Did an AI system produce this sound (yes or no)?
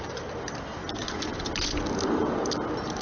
no